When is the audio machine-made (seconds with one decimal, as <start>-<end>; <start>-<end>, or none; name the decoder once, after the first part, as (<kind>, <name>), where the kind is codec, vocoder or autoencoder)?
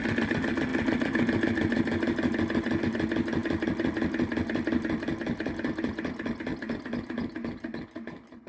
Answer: none